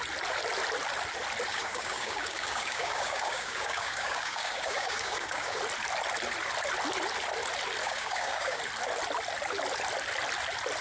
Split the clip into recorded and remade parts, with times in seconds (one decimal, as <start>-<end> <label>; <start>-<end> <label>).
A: 0.0-1.5 recorded; 1.5-5.6 remade; 5.6-7.8 recorded; 7.8-8.6 remade; 8.6-10.8 recorded